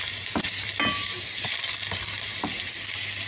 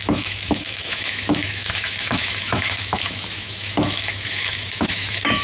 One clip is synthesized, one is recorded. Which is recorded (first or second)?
first